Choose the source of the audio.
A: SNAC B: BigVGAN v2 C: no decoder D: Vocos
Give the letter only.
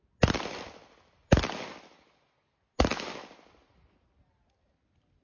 C